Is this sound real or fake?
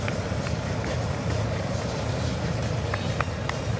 real